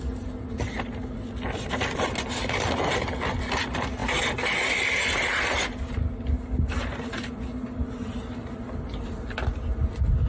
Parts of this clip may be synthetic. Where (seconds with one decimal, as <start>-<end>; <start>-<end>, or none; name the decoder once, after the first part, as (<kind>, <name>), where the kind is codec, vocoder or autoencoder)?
none